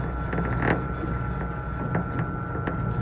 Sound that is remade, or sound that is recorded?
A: recorded